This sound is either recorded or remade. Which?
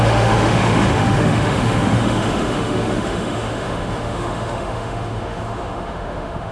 remade